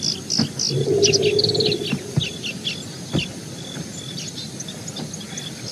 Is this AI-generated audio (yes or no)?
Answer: no